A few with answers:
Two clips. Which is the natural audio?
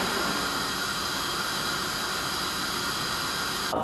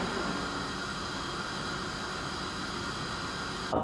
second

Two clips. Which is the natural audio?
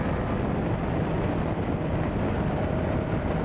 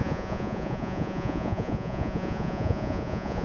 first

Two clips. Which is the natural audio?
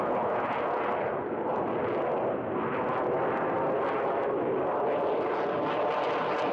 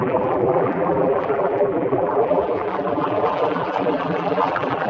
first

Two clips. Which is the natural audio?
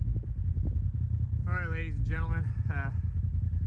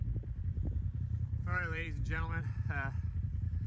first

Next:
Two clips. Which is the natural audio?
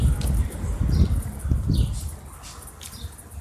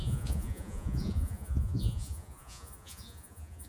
first